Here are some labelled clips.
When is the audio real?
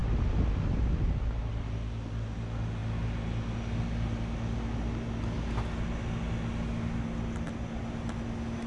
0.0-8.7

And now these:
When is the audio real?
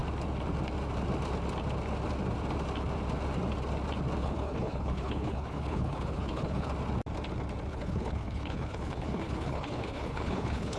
0.0-4.2; 6.7-7.7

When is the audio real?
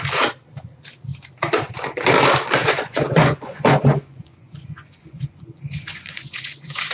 0.0-2.6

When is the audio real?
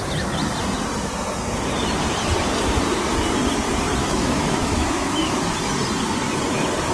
0.0-4.0; 5.4-6.9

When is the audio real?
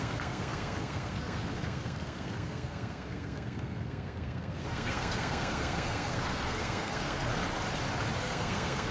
7.3-8.2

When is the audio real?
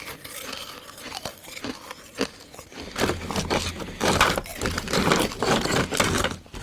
0.0-6.6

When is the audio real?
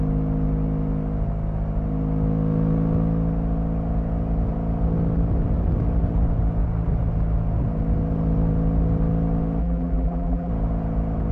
0.0-9.6; 10.5-11.3